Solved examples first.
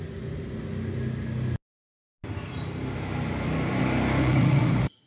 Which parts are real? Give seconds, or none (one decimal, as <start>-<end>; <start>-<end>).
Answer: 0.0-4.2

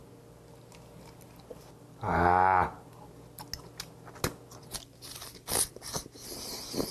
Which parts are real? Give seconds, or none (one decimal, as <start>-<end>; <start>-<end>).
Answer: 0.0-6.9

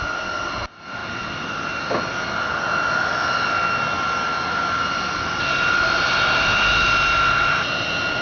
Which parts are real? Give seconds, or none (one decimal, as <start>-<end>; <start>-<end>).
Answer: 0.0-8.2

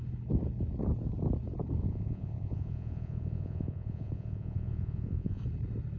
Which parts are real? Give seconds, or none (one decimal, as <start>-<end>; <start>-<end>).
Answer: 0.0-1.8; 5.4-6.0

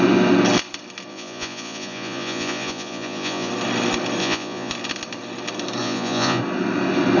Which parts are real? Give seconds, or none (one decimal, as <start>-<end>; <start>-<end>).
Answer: 0.0-1.1; 3.5-4.2; 4.7-5.8; 6.4-7.2